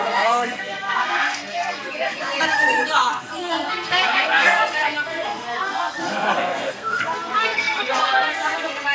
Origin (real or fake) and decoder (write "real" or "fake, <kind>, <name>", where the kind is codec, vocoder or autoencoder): fake, codec, SNAC